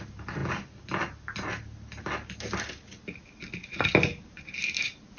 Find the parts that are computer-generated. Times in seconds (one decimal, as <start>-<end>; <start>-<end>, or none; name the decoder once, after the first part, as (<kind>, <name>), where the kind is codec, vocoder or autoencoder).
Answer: none